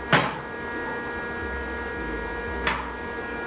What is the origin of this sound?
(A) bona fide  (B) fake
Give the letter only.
A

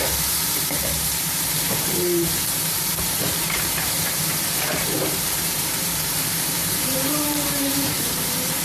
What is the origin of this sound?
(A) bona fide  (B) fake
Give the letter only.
B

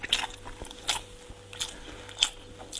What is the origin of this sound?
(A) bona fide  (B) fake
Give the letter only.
A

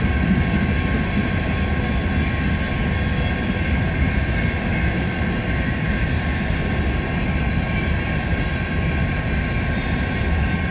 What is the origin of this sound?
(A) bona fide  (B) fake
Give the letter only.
A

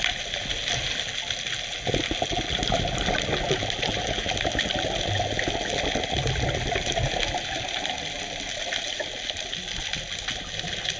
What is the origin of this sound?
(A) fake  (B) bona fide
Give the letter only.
B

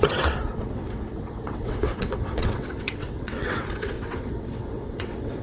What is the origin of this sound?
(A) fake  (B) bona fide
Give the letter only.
A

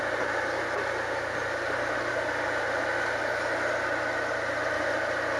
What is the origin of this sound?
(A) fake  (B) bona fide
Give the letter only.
B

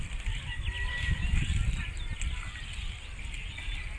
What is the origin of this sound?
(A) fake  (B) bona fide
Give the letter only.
B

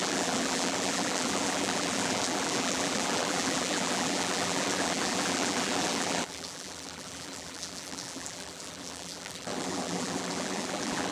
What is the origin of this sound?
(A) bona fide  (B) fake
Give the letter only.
B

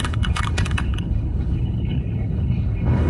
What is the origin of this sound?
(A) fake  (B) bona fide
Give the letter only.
A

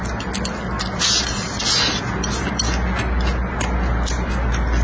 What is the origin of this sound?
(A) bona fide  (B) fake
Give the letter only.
A